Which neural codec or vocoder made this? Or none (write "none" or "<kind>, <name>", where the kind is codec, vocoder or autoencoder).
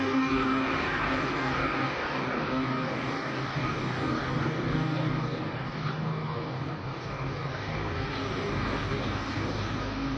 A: codec, DAC